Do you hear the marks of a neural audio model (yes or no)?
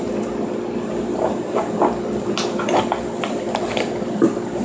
no